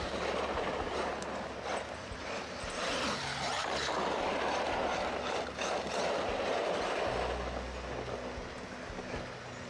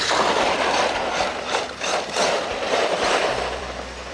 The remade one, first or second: second